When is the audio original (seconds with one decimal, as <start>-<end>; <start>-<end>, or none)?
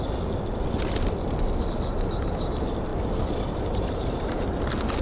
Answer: 0.0-2.9; 4.6-5.0